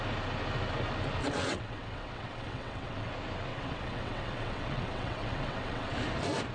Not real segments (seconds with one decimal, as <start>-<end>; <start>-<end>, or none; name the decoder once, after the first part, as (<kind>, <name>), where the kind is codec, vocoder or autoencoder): 1.2-3.1 (vocoder, WaveNeXt); 3.5-5.9